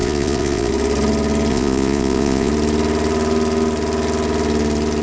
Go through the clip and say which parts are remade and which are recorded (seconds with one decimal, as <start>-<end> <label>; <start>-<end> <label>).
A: 0.0-0.7 remade; 0.7-1.5 recorded; 1.5-2.5 remade; 2.5-5.0 recorded